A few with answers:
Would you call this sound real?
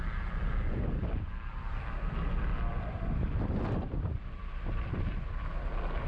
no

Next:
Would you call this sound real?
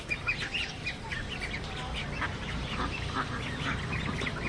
yes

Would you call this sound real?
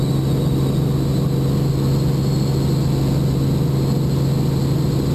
yes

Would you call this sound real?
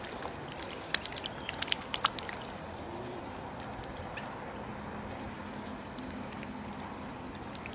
yes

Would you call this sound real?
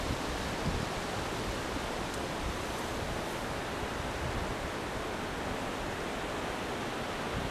yes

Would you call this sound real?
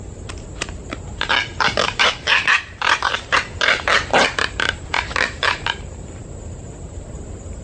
no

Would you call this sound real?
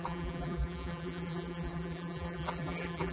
no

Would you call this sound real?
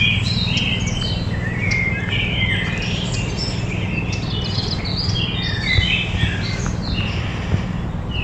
yes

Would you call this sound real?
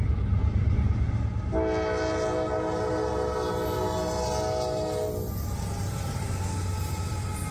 yes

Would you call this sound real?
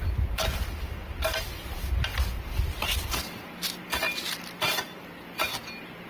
yes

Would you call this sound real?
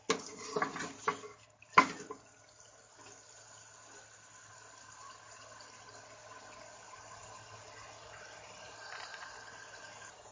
yes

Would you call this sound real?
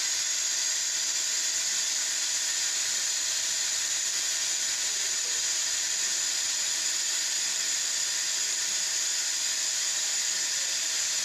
no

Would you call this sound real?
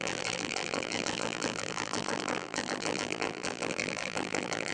no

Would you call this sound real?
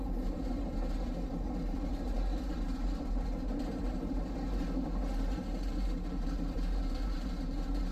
no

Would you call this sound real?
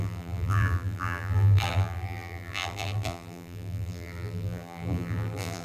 no